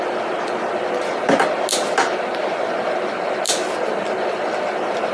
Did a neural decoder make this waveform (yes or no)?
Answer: no